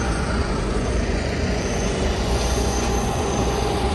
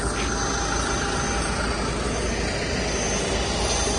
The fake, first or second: first